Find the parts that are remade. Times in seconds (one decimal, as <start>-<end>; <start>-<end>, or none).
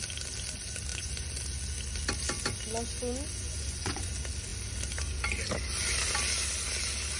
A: 0.9-1.4; 3.4-4.1